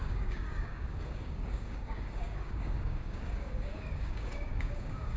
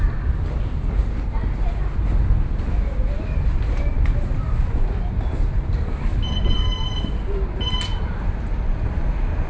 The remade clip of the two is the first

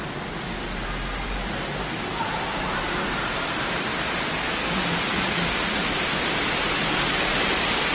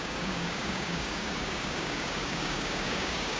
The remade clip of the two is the second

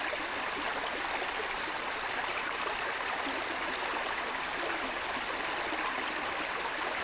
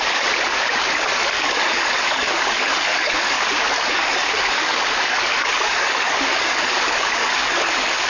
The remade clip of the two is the second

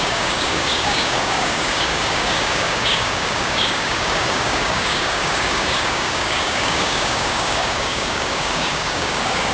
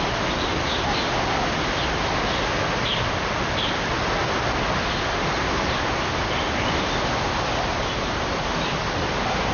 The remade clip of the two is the first